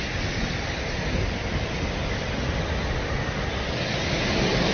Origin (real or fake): real